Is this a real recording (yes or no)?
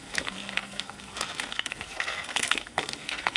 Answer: no